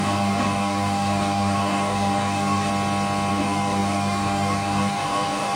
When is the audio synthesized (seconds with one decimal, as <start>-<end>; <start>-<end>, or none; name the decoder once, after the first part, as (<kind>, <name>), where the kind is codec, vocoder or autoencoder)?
0.0-2.7 (codec, DAC); 3.3-5.6